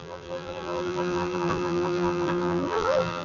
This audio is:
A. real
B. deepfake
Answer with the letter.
B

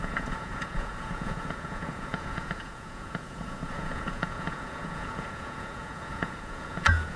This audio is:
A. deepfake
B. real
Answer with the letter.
A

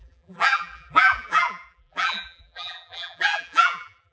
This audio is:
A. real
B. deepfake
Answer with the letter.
B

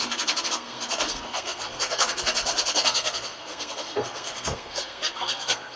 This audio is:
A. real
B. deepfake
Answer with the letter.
B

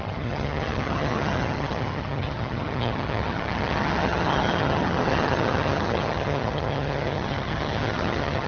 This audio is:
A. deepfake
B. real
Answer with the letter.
A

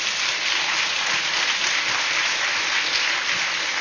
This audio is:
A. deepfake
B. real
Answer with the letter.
B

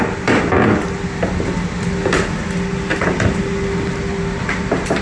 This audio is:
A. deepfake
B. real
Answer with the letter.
B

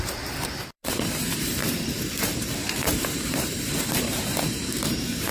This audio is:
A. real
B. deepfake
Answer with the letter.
B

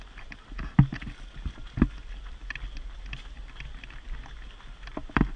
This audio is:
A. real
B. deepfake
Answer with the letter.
A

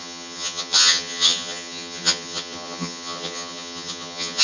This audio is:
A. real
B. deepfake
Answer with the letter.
B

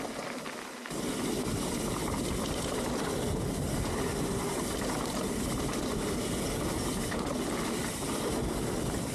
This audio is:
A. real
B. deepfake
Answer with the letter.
A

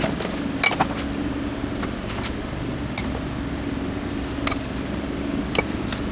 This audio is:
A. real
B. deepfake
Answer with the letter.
A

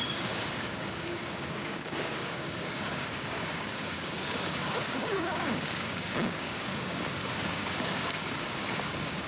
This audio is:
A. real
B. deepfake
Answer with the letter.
B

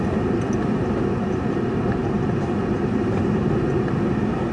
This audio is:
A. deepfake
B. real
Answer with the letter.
B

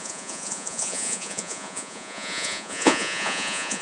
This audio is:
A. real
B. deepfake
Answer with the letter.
B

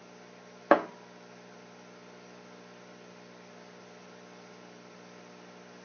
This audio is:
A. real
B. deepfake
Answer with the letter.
A